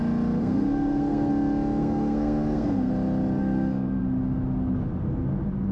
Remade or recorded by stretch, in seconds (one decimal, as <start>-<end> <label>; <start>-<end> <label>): 0.0-0.4 recorded; 0.4-1.3 remade; 1.3-1.8 recorded; 1.8-2.9 remade; 2.9-3.4 recorded; 3.4-4.0 remade; 4.0-5.7 recorded